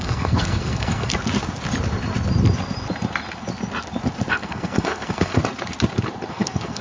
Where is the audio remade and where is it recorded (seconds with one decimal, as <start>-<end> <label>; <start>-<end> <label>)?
0.0-1.1 remade; 1.1-4.3 recorded; 4.3-5.4 remade; 5.4-6.3 recorded; 6.3-6.8 remade